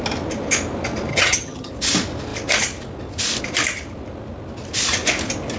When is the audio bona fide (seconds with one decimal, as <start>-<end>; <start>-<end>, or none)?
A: 0.0-1.1; 1.7-5.6